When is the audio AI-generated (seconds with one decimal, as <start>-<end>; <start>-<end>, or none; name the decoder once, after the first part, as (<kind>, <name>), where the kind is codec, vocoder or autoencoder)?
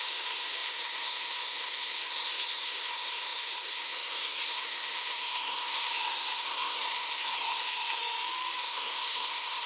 0.0-8.0 (codec, SNAC); 8.6-9.7